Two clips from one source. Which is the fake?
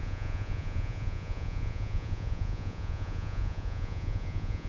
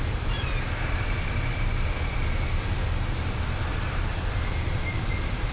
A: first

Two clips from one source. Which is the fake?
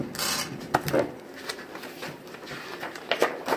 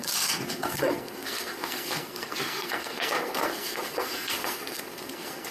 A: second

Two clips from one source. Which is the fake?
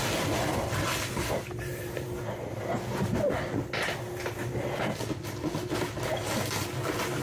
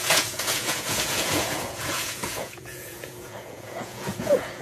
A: second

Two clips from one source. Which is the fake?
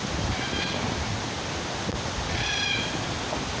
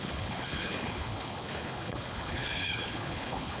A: second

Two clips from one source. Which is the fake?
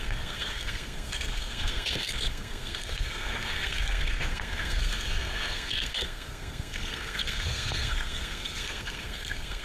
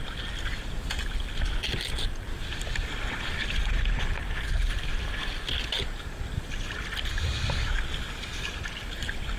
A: first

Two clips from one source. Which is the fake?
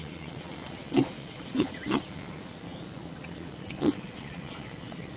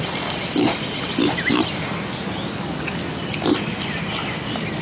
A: first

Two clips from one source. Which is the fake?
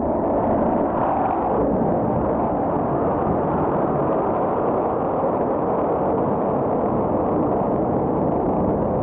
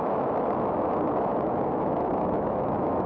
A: second